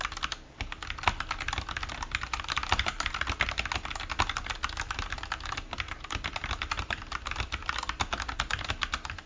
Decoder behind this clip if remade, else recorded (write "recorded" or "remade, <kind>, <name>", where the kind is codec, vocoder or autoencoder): recorded